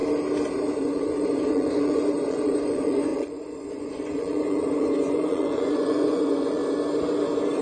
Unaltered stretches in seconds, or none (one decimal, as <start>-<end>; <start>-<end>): 0.0-0.8; 6.6-7.6